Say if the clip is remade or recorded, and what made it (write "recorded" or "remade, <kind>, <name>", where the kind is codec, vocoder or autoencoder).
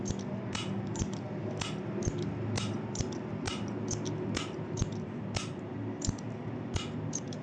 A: recorded